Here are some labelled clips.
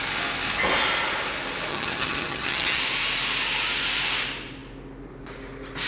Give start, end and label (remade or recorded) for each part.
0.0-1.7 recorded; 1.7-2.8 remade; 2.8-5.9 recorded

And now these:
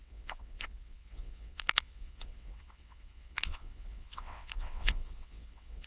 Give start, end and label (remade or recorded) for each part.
0.0-5.9 remade